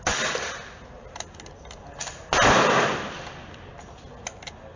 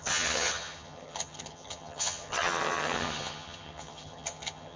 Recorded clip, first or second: first